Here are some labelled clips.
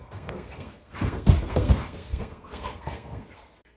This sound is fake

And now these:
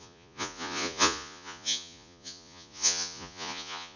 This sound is fake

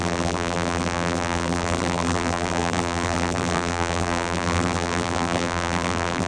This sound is fake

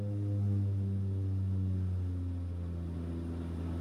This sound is real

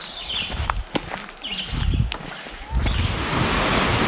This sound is real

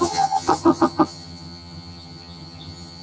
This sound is fake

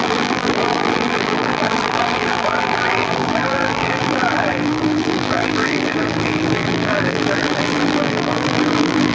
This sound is fake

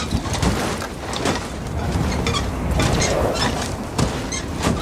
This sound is real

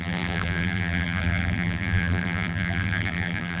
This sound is fake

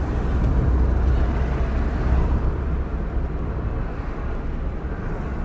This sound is real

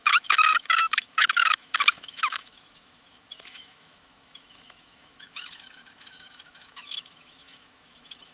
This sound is fake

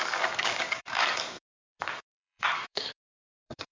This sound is fake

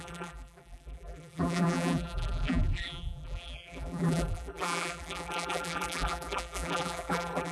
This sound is fake